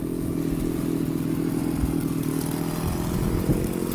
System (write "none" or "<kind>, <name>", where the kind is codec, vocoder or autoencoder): none